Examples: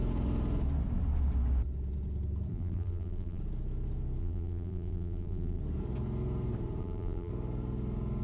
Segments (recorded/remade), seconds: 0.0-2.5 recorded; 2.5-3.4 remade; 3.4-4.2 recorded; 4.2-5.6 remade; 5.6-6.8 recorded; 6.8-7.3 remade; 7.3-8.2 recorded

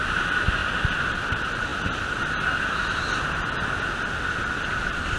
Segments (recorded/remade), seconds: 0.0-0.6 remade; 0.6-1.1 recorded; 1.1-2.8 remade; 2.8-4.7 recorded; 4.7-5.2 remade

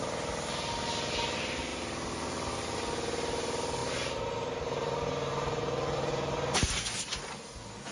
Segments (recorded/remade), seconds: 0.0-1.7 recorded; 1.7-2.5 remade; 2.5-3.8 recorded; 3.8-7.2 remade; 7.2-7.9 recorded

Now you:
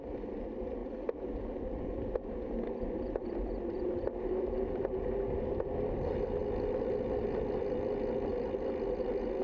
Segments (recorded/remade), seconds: 0.0-0.8 recorded; 0.8-4.8 remade; 4.8-8.3 recorded; 8.3-9.4 remade

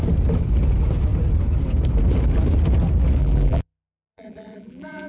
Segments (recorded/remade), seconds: 0.0-3.2 recorded; 3.2-5.1 remade

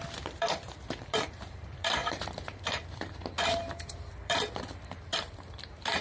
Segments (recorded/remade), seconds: 0.0-6.0 remade

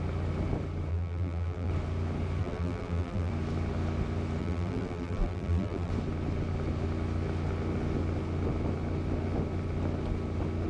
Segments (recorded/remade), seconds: 0.0-0.9 recorded; 0.9-1.7 remade; 1.7-2.4 recorded; 2.4-3.3 remade; 3.3-4.4 recorded; 4.4-5.9 remade; 5.9-10.7 recorded